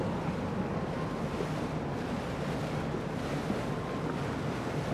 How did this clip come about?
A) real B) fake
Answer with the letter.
A